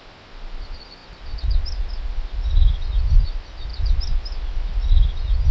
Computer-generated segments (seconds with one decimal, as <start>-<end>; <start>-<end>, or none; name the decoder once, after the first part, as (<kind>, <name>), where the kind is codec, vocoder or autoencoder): none